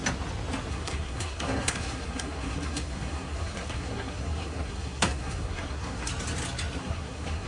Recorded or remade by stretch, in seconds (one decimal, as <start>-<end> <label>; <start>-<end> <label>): 0.0-0.7 recorded; 0.7-6.1 remade; 6.1-6.8 recorded; 6.8-7.5 remade